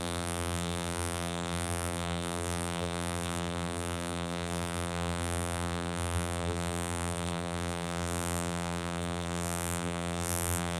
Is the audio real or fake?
fake